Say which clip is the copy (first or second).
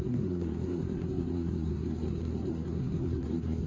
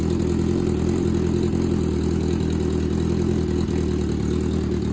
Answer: first